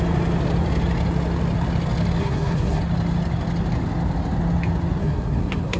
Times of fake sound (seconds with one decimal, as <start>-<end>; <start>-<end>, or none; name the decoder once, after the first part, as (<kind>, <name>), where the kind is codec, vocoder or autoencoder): 2.2-2.8 (codec, SNAC); 5.0-5.8